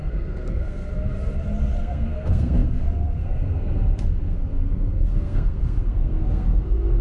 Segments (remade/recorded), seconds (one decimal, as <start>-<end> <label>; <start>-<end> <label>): 0.0-0.8 remade; 0.8-1.8 recorded; 1.8-7.0 remade